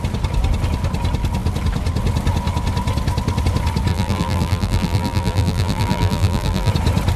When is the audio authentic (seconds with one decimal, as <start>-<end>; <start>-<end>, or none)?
0.0-3.9; 6.7-7.2